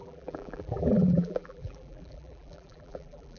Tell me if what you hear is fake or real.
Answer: fake